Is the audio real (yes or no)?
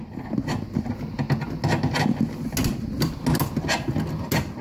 yes